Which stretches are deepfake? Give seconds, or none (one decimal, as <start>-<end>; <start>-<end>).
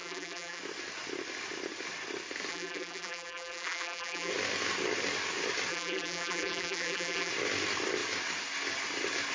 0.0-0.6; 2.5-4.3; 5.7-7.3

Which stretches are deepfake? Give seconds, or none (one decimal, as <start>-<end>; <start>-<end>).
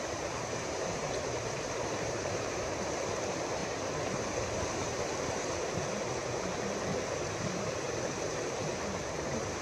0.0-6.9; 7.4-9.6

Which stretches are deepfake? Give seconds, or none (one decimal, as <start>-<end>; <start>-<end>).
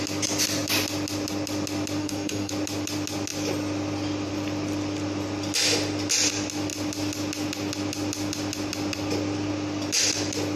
2.0-2.5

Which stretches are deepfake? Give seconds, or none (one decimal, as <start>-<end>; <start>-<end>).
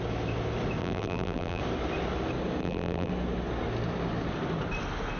0.8-1.6; 2.6-3.1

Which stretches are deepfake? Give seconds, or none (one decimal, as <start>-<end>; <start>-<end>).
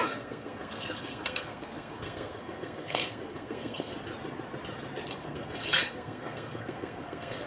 0.0-3.9; 5.1-7.5